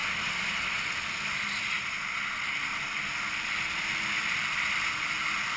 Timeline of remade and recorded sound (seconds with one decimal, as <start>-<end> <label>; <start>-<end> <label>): 0.0-3.4 recorded; 3.4-5.6 remade